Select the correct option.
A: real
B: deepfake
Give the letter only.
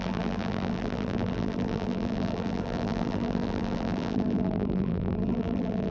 B